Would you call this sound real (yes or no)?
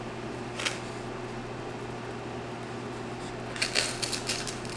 yes